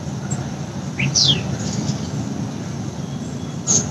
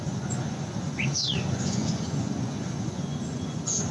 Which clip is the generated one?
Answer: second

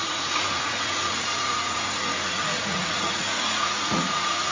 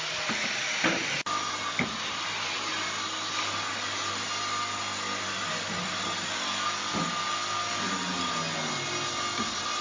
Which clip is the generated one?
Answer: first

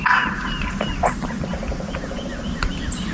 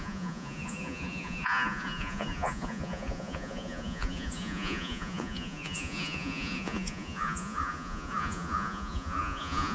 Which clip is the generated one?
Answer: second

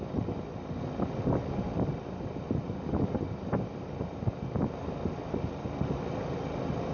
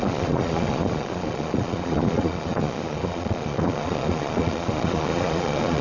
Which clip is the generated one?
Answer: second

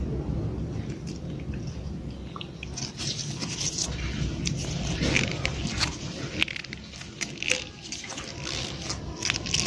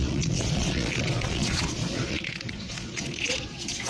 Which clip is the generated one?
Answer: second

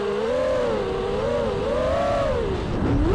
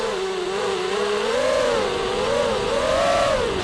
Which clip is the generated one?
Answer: second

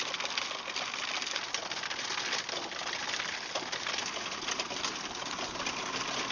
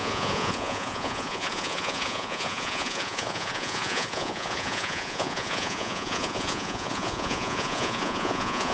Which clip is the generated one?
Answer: second